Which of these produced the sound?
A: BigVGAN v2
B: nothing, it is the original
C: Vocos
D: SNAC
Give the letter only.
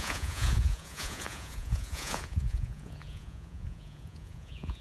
C